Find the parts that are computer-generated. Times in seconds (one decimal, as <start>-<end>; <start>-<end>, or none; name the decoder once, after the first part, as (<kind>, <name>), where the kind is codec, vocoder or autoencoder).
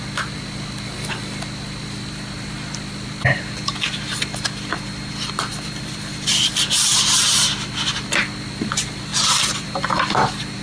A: 5.5-6.5 (vocoder, BigVGAN v2); 9.1-10.1